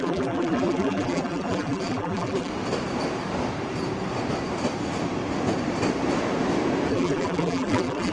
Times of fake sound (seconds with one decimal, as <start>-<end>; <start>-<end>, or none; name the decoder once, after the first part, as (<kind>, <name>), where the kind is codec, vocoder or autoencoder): 0.0-2.5 (vocoder, BigVGAN v2); 6.9-8.1